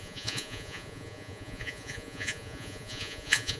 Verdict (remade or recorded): remade